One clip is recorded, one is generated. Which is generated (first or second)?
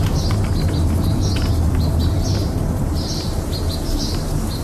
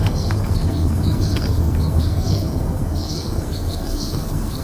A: second